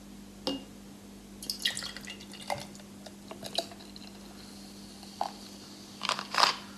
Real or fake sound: real